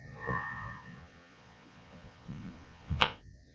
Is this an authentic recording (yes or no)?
no